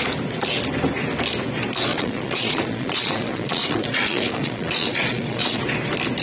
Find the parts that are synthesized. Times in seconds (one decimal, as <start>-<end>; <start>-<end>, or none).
1.9-5.6